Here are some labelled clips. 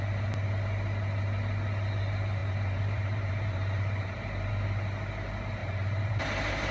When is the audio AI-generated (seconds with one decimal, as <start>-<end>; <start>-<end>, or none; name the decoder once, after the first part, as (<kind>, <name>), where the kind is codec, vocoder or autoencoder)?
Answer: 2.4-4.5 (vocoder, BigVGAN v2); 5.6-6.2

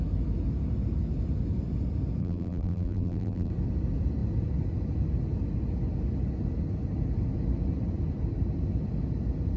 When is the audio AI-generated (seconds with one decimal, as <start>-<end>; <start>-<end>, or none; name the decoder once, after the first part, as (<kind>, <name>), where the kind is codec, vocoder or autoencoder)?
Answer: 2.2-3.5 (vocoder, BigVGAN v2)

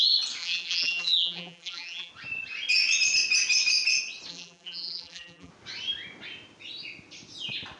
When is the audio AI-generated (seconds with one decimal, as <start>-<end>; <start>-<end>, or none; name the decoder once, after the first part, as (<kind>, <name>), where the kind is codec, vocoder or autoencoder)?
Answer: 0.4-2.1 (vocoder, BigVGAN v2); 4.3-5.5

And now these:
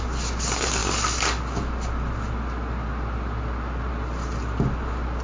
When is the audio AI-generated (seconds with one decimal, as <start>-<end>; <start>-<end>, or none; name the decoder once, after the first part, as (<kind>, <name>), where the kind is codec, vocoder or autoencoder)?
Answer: none

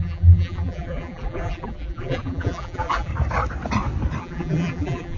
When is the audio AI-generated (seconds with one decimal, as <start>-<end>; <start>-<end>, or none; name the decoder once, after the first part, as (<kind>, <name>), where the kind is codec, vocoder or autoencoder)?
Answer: 0.0-3.1 (vocoder, BigVGAN v2); 4.2-5.2

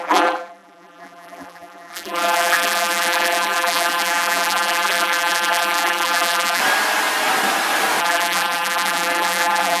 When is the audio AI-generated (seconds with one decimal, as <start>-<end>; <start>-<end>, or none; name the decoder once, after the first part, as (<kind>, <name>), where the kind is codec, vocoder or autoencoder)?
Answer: 0.0-6.6 (vocoder, BigVGAN v2); 8.0-9.8

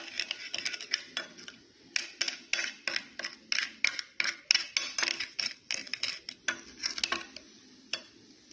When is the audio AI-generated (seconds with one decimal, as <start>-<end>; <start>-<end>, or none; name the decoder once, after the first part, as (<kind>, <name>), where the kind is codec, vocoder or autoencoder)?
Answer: none

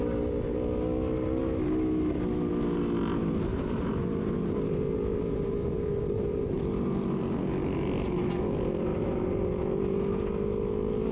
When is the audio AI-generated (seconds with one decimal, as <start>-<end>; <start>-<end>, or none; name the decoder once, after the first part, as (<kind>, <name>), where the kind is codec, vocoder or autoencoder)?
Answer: 3.5-6.6 (vocoder, BigVGAN v2); 8.9-9.6